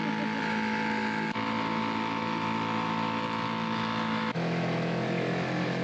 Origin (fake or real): fake